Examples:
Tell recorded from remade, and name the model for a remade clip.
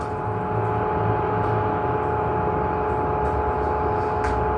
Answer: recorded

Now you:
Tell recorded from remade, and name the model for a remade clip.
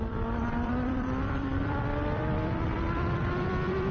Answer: remade, vocoder, BigVGAN v2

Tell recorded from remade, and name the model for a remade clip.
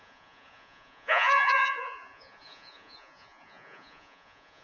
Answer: remade, vocoder, Vocos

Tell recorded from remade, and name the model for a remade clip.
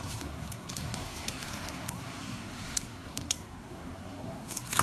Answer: remade, codec, SNAC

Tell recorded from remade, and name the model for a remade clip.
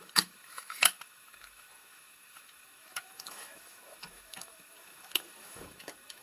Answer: remade, autoencoder, DAC-VAE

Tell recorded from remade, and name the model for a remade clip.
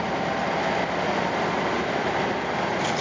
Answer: recorded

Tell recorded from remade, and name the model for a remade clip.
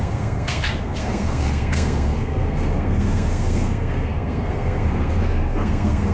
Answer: remade, codec, SNAC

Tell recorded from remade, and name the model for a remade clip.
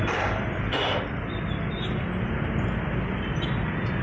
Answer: recorded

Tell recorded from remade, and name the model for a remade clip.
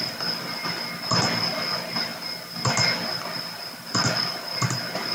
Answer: recorded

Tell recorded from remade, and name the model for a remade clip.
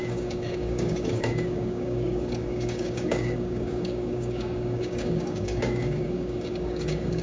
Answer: remade, codec, DAC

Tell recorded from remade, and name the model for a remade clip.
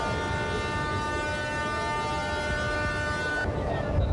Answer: recorded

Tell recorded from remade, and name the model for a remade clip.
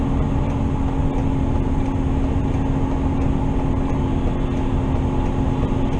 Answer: recorded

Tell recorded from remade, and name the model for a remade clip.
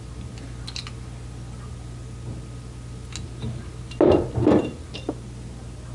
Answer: recorded